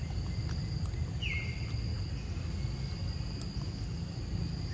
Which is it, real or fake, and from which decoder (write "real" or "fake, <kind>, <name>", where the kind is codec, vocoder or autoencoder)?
real